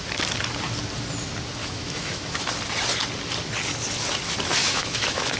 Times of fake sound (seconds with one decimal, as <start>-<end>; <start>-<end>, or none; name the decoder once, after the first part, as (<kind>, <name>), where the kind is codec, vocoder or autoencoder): 1.6-2.5 (autoencoder, DAC-VAE); 4.6-5.4